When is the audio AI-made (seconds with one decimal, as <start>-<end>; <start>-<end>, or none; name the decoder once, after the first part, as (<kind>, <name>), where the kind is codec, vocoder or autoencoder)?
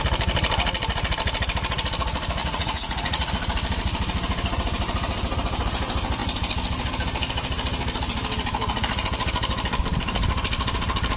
2.4-3.3 (vocoder, Vocos)